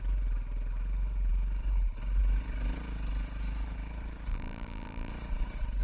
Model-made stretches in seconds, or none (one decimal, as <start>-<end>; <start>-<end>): 4.3-5.1